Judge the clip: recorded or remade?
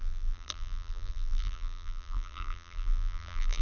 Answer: remade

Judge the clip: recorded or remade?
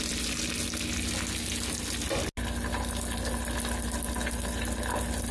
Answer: recorded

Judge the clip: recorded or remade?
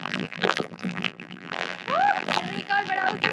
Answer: remade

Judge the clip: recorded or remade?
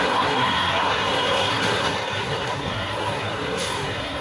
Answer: remade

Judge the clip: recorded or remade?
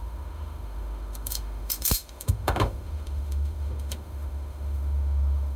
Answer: remade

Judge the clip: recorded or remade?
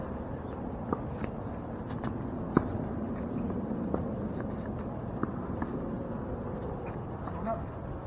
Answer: recorded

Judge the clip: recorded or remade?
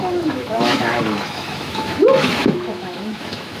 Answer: remade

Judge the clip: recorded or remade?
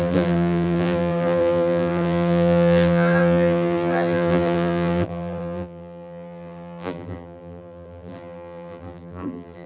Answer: remade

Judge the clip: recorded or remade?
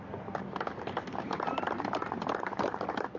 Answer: recorded